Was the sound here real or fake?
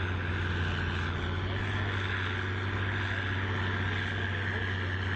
real